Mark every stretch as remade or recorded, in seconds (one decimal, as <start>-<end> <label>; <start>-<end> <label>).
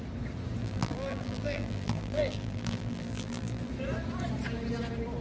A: 0.0-0.6 recorded; 0.6-3.7 remade; 3.7-5.2 recorded